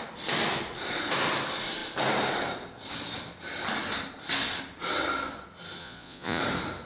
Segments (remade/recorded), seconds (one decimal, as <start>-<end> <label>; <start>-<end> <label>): 0.0-5.8 recorded; 5.8-6.4 remade; 6.4-6.9 recorded